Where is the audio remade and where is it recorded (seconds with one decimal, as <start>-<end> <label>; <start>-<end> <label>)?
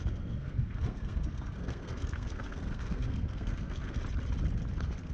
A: 0.0-4.0 remade; 4.0-5.1 recorded